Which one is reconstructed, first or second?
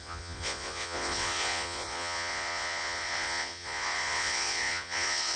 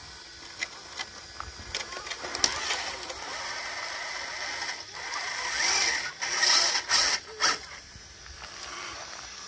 first